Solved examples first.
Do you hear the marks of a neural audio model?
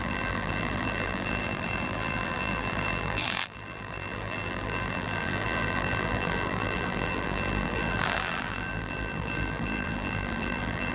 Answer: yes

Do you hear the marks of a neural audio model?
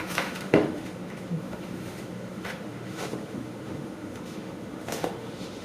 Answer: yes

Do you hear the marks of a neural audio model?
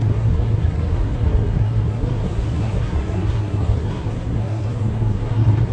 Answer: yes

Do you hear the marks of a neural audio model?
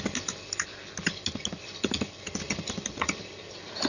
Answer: no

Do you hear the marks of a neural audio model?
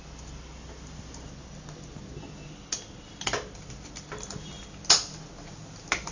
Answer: no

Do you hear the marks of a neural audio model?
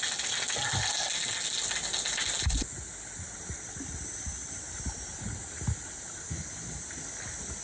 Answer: no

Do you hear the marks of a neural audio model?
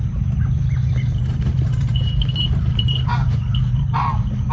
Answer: yes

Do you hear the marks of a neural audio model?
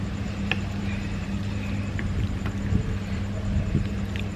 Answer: yes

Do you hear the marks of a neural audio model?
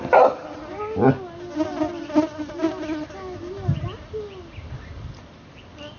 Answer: no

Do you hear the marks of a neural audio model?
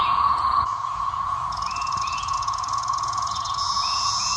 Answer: yes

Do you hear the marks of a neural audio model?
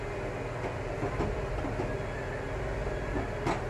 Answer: no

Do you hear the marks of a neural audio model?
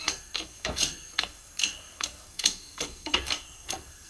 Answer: yes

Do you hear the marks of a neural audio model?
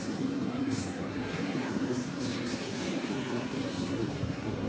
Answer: yes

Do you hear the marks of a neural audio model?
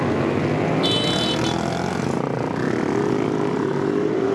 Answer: no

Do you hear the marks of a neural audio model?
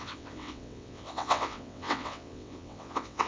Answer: yes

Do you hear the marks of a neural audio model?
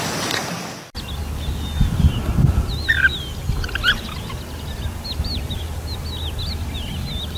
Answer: no